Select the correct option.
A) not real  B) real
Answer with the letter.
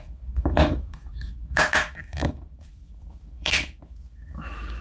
A